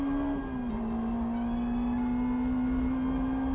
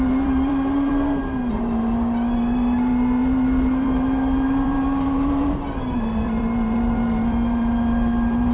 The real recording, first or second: first